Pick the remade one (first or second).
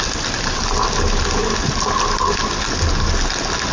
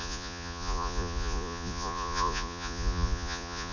second